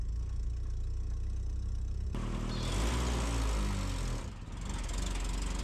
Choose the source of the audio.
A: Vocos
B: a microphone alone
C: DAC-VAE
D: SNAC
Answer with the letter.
B